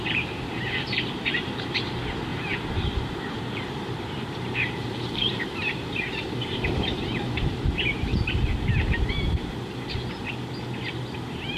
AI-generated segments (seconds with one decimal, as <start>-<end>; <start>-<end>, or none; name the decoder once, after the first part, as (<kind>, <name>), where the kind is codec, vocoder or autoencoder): 0.0-8.1 (vocoder, BigVGAN v2); 10.9-11.6